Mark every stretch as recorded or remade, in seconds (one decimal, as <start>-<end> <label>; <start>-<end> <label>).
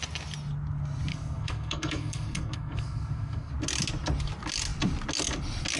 0.0-1.1 recorded; 1.1-3.5 remade; 3.5-5.8 recorded